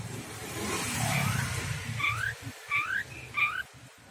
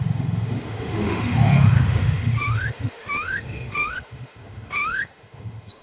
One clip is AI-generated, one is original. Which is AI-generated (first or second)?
second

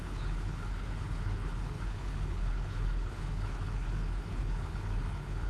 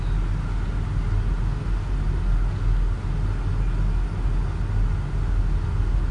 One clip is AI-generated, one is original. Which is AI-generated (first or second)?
first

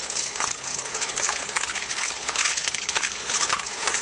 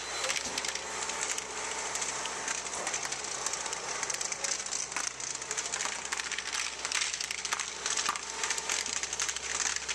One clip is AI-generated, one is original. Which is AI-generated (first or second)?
first